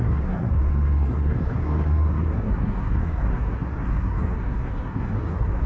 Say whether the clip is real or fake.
fake